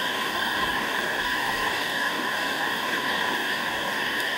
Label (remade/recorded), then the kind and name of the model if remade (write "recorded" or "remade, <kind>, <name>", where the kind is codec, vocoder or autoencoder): remade, codec, DAC